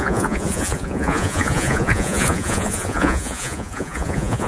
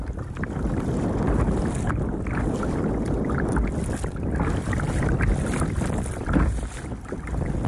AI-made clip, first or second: first